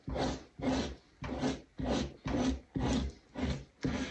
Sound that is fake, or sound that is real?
real